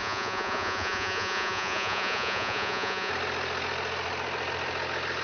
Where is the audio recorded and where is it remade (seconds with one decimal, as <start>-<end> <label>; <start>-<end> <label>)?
0.0-3.1 remade; 3.1-5.2 recorded